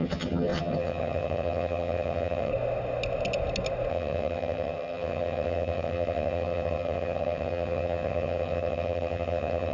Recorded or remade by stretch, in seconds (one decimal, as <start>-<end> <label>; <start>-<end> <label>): 0.0-2.5 remade; 2.5-3.9 recorded; 3.9-9.7 remade